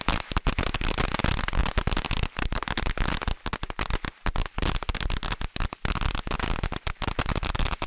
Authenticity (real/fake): real